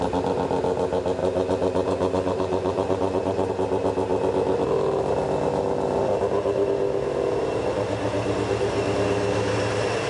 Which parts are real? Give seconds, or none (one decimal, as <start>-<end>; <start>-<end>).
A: 0.0-1.2; 3.5-10.1